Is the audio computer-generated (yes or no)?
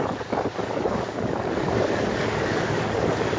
yes